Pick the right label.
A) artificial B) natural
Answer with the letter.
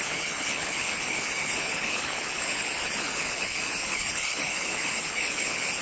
A